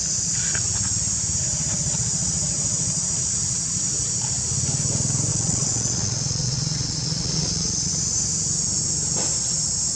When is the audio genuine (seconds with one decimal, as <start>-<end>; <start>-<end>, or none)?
0.0-5.3; 7.9-10.0